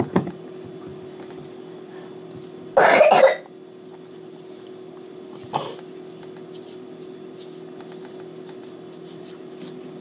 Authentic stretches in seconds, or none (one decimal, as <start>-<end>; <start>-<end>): 0.0-10.0